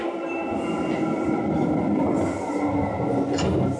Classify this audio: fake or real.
real